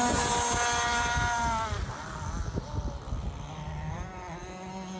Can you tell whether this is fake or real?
real